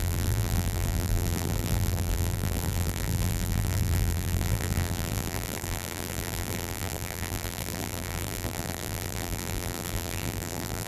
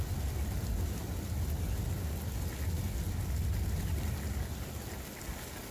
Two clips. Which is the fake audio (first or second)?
first